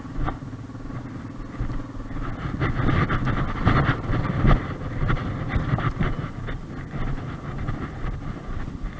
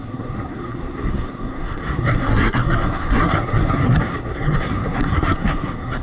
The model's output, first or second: second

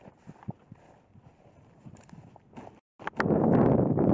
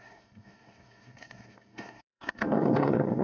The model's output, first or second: second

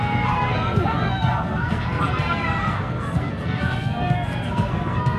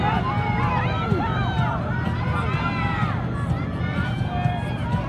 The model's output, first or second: first